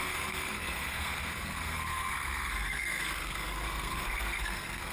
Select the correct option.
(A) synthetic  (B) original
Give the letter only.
A